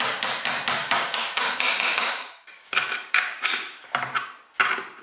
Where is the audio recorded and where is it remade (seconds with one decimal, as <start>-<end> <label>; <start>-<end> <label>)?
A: 0.0-0.8 recorded; 0.8-3.8 remade; 3.8-5.0 recorded